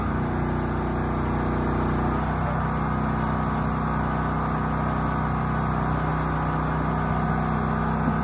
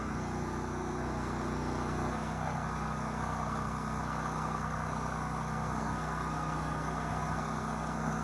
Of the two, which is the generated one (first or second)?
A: second